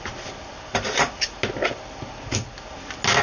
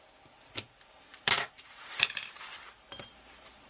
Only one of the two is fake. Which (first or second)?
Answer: second